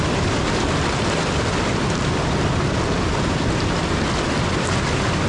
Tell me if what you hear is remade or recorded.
remade